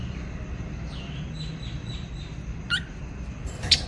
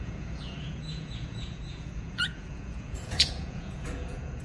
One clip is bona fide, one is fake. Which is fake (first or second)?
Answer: second